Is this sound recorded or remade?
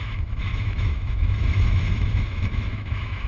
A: remade